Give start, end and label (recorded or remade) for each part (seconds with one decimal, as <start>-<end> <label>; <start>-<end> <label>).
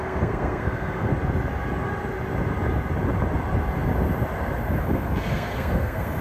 0.0-1.1 remade; 1.1-4.8 recorded; 4.8-6.2 remade